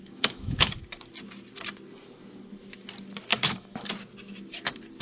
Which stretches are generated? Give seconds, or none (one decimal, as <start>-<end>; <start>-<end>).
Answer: 0.0-0.8; 3.3-3.9